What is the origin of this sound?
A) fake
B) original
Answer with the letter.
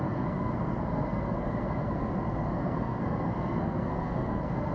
A